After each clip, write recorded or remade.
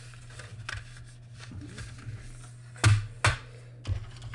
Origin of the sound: recorded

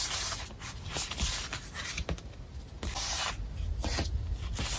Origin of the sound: recorded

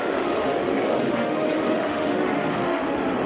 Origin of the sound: remade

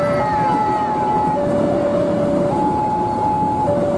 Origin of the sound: recorded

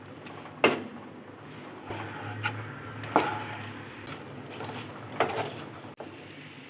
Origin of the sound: recorded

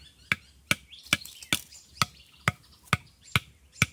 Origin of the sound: recorded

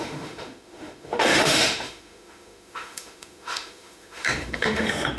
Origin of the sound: remade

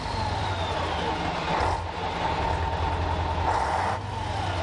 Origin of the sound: recorded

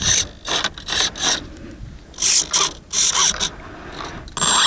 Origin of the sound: recorded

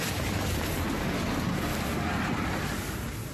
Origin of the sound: recorded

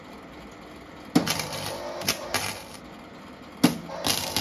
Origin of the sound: recorded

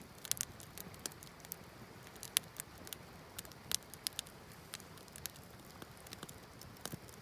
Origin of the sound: recorded